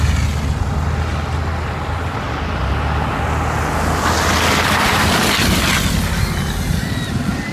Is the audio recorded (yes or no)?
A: yes